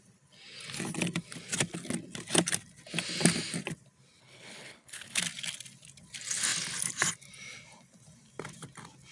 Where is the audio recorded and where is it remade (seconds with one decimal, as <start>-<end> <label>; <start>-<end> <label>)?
0.0-4.2 recorded; 4.2-5.2 remade; 5.2-9.1 recorded